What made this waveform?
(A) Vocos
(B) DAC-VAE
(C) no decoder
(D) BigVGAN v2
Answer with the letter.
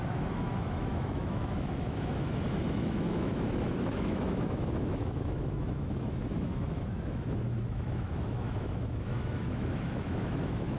B